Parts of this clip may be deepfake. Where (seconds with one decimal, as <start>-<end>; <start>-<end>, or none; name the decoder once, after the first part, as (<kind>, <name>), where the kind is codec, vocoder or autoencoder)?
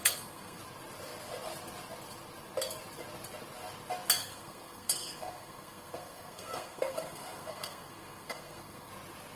0.0-0.6 (codec, SNAC); 4.2-8.9